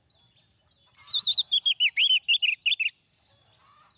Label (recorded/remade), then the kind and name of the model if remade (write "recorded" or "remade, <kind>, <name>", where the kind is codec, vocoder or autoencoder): recorded